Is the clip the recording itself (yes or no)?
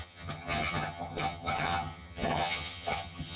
no